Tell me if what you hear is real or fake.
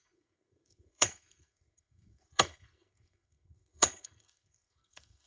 fake